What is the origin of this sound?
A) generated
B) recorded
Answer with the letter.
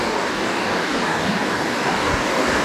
A